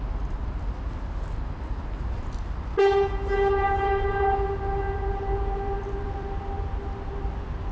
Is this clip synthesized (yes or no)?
no